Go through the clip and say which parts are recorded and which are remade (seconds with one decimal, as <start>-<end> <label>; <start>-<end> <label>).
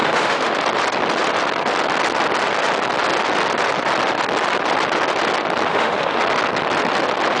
0.0-0.6 remade; 0.6-5.7 recorded; 5.7-6.2 remade; 6.2-7.4 recorded